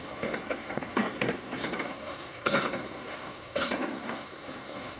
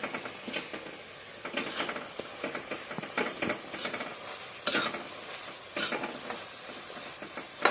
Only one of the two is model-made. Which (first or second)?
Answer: first